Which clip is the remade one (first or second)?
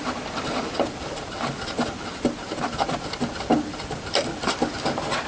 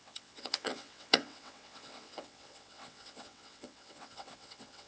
second